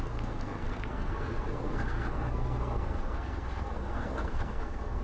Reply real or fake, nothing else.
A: fake